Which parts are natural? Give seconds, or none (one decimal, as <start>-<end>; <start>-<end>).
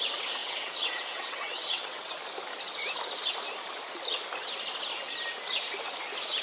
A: 0.0-0.4; 2.1-6.4